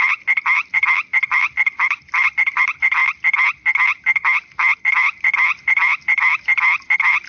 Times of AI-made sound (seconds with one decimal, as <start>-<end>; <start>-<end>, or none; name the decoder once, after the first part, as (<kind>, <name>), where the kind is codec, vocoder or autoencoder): 0.0-3.0 (vocoder, BigVGAN v2); 4.9-7.3